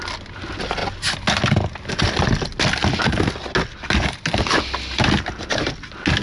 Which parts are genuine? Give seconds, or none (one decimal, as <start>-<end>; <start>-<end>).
0.0-6.2